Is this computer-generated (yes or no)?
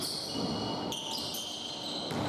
no